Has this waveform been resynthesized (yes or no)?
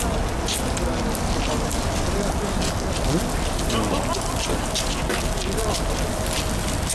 no